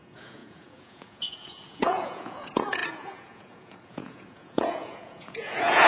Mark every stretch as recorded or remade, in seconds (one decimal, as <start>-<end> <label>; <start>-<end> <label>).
0.0-5.9 remade